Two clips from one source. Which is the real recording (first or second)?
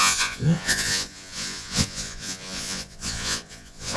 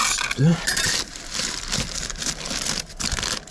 second